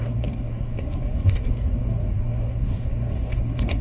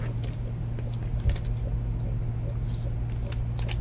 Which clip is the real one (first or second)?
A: second